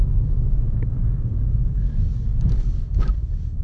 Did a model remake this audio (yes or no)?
yes